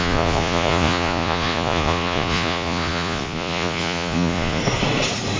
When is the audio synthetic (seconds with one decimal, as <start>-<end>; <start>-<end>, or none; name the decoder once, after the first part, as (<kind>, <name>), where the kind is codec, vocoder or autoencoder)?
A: 0.0-4.6 (vocoder, Vocos)